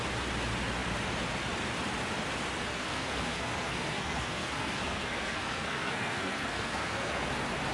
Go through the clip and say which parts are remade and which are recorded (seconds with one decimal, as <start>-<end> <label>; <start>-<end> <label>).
0.0-2.7 recorded; 2.7-7.3 remade; 7.3-7.7 recorded